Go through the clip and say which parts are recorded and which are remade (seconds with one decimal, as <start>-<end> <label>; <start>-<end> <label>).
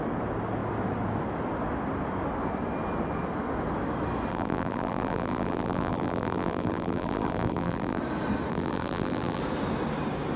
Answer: 0.0-4.3 recorded; 4.3-8.0 remade; 8.0-8.5 recorded; 8.5-9.4 remade; 9.4-10.4 recorded